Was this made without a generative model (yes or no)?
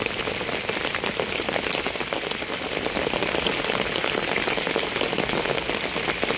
yes